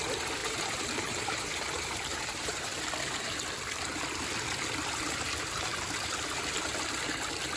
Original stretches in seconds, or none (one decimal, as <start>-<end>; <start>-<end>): 0.0-0.4; 2.6-7.6